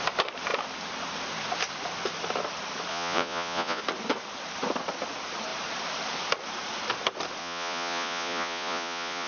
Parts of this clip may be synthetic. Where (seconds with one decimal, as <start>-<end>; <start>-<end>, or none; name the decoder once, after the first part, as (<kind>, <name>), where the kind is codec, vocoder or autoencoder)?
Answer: 2.9-3.8 (vocoder, Vocos); 7.4-9.3